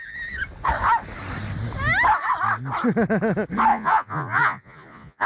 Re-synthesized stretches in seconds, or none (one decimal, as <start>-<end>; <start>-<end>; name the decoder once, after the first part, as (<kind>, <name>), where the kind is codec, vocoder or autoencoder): 3.7-5.3 (vocoder, Vocos)